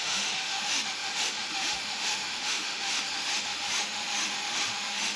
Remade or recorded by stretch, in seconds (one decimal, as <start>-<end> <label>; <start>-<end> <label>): 0.0-5.2 remade

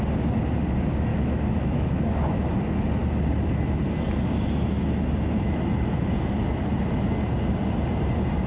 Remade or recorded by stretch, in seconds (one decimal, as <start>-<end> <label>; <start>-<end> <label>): 0.0-1.1 recorded; 1.1-2.4 remade; 2.4-8.5 recorded

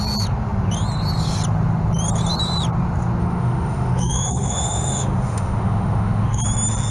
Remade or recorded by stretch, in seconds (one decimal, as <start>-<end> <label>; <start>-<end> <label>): 0.0-3.2 recorded; 3.2-6.4 remade; 6.4-6.9 recorded

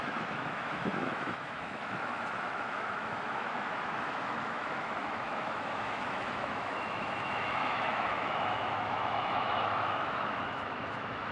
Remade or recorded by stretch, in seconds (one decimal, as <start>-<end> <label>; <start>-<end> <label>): 0.0-11.3 remade

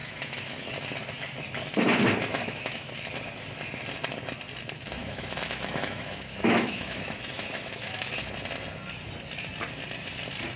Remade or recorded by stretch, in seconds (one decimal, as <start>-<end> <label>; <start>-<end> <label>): 0.0-0.7 remade; 0.7-2.4 recorded; 2.4-2.9 remade; 2.9-5.0 recorded; 5.0-8.1 remade; 8.1-10.6 recorded

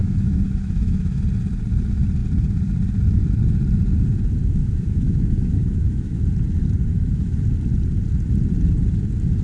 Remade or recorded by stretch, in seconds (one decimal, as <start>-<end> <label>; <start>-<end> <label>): 0.0-1.2 remade; 1.2-4.6 recorded; 4.6-6.2 remade; 6.2-6.9 recorded; 6.9-7.4 remade; 7.4-9.4 recorded

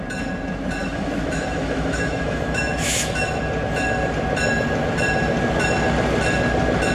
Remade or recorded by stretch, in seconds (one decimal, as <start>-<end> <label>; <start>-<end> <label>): 0.0-0.8 recorded; 0.8-3.3 remade; 3.3-6.9 recorded

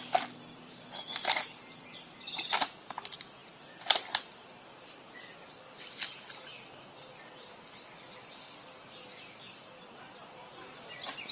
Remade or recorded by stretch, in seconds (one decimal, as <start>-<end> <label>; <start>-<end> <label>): 0.0-11.3 recorded